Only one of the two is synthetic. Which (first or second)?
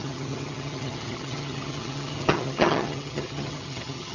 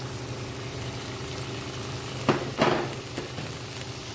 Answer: first